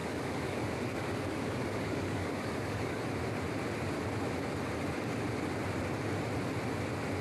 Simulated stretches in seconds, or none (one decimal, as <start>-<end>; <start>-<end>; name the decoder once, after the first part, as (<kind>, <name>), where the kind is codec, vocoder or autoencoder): 0.0-3.0 (codec, DAC)